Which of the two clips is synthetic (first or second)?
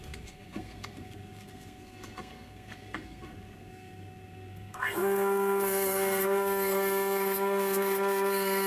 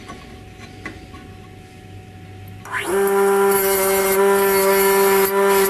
first